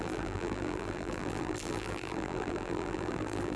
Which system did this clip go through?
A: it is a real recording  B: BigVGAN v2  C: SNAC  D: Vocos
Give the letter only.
B